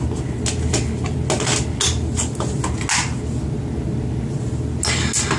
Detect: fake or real real